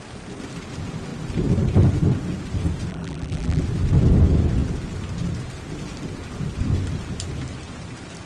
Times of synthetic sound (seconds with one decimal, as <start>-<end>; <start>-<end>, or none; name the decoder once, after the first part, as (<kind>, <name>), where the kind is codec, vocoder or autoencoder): 2.9-3.6 (vocoder, BigVGAN v2)